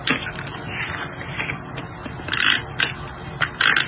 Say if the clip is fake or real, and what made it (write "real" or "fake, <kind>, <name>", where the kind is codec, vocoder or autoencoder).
real